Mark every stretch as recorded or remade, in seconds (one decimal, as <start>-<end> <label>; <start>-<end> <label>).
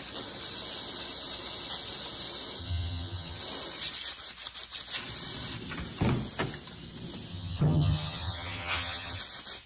0.0-2.6 recorded; 2.6-3.4 remade; 3.4-7.3 recorded; 7.3-9.2 remade; 9.2-9.7 recorded